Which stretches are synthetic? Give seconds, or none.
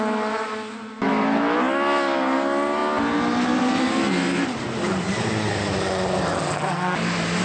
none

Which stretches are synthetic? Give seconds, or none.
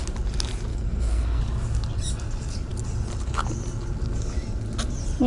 0.7-1.4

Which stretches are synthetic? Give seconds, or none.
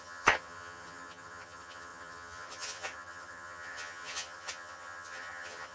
0.0-5.7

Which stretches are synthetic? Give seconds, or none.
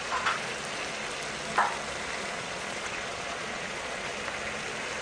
0.0-0.5; 2.2-4.1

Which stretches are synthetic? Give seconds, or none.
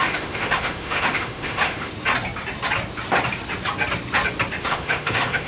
0.0-1.9; 4.6-5.5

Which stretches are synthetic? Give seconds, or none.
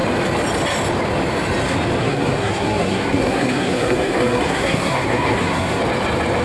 2.0-5.8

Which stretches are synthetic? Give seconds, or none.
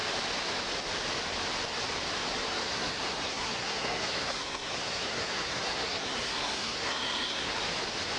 2.6-7.5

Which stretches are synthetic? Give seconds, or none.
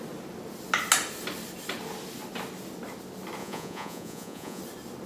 3.4-4.6